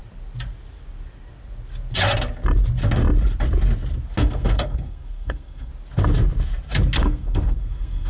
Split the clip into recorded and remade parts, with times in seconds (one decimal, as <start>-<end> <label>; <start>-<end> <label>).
0.0-4.2 recorded; 4.2-5.7 remade; 5.7-7.0 recorded; 7.0-8.1 remade